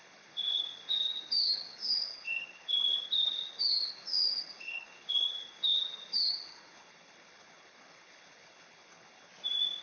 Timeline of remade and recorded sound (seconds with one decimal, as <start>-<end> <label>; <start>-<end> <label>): 0.0-9.3 remade; 9.3-9.8 recorded